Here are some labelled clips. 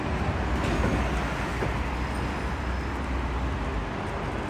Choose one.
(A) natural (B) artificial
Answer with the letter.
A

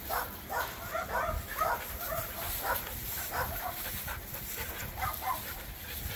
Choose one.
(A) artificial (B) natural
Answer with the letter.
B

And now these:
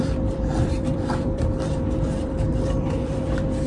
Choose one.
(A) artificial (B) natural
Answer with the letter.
A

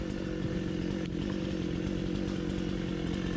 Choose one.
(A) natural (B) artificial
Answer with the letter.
A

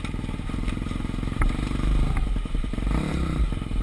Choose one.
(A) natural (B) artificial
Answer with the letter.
B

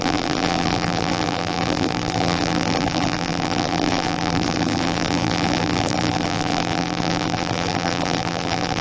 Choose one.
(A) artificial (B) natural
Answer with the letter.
A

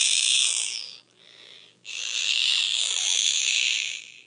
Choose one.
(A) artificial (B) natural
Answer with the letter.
A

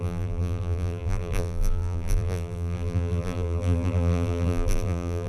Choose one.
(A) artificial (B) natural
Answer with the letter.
A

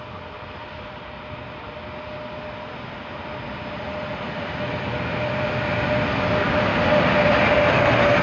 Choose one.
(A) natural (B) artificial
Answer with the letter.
A